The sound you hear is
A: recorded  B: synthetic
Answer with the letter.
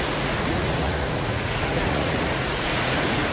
B